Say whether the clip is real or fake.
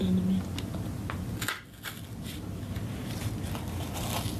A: real